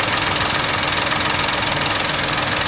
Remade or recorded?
recorded